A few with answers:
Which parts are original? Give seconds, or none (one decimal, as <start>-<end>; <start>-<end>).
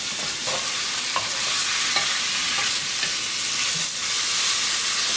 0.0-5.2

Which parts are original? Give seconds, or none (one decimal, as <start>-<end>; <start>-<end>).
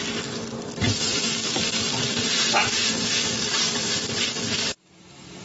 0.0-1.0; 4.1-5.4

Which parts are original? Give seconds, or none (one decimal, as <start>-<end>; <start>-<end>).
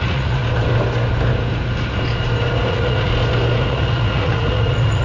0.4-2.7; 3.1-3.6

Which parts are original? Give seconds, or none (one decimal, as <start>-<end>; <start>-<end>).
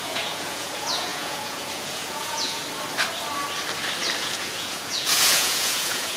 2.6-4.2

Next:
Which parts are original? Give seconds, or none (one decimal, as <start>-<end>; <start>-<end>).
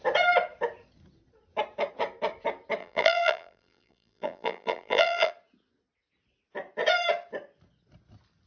0.0-2.8; 5.3-8.5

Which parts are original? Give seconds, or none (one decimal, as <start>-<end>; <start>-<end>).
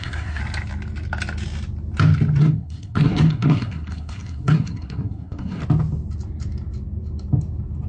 0.4-2.4; 5.6-7.9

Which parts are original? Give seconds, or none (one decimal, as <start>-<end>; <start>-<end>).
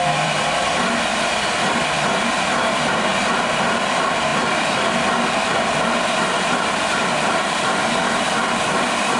3.1-3.9; 4.3-5.8